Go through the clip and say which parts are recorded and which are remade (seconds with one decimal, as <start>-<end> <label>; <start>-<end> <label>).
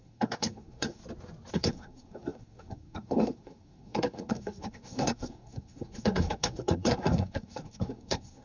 0.0-1.0 remade; 1.0-1.5 recorded; 1.5-8.4 remade